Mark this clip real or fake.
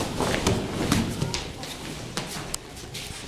real